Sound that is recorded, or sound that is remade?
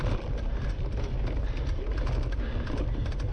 recorded